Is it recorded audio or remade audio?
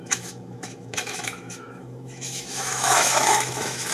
remade